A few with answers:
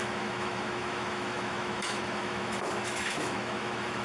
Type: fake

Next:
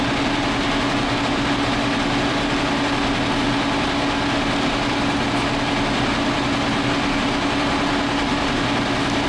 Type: real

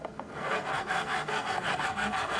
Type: fake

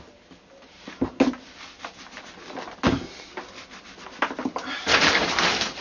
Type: real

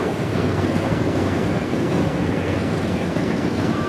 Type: fake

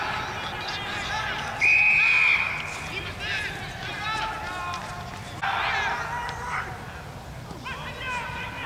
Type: real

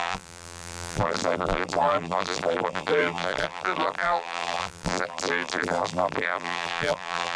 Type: fake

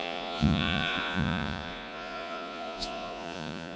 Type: fake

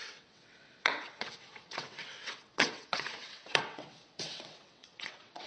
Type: fake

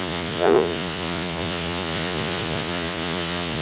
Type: fake